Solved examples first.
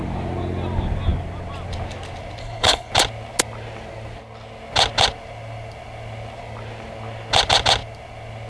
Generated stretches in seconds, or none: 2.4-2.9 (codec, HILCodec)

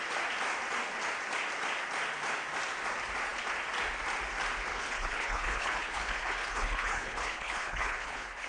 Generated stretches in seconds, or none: 4.7-8.5 (codec, HILCodec)

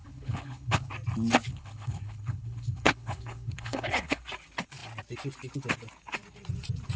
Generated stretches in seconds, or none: 0.0-0.9 (codec, HILCodec); 1.5-4.2

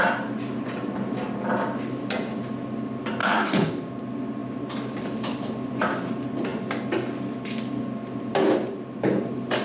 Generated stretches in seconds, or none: 3.2-3.7 (codec, HILCodec)